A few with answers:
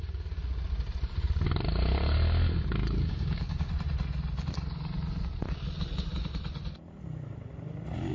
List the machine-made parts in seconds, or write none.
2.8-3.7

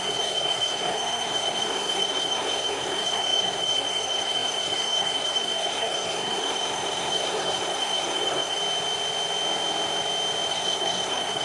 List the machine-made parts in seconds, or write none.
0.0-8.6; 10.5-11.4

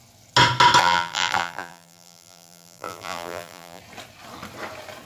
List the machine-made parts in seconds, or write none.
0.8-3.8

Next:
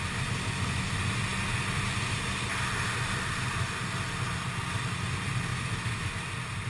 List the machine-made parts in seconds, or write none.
5.5-6.1